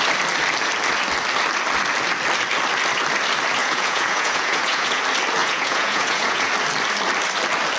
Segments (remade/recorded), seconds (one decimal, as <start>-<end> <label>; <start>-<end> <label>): 0.0-3.6 recorded; 3.6-5.0 remade; 5.0-5.4 recorded; 5.4-6.5 remade; 6.5-7.8 recorded